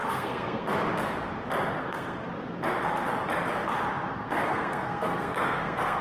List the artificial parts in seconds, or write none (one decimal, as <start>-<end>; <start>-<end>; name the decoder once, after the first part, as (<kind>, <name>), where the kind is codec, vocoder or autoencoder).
0.0-0.7 (codec, SNAC); 1.8-2.3; 4.1-6.0